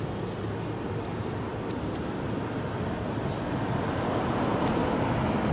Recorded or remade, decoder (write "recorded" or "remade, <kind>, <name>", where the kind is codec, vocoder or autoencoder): recorded